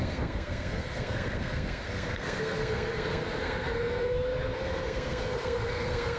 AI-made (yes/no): yes